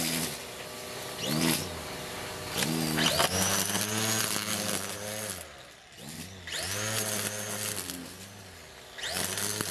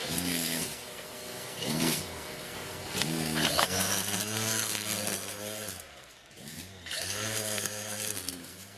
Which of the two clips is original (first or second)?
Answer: first